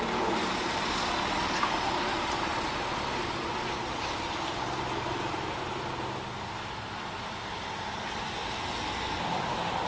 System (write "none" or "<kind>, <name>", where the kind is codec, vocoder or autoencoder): none